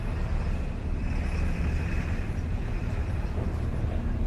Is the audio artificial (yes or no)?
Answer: no